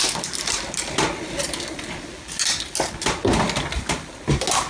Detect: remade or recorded recorded